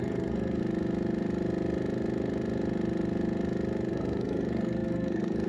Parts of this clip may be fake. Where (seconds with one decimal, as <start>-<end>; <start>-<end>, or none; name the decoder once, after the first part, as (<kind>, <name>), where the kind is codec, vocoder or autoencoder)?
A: 0.0-0.6 (codec, SNAC); 3.9-5.5